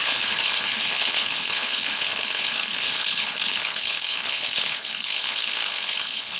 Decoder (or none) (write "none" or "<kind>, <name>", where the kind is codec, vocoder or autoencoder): codec, HILCodec